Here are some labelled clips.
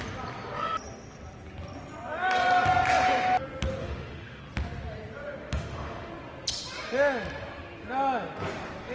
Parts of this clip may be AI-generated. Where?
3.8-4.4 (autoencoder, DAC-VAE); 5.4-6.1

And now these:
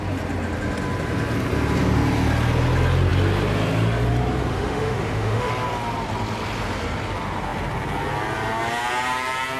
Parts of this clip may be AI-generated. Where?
4.5-5.5 (autoencoder, DAC-VAE)

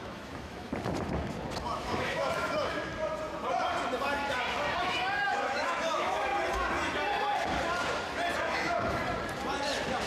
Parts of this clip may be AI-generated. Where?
0.0-0.7 (autoencoder, DAC-VAE); 1.6-2.9; 4.8-6.3; 8.4-9.0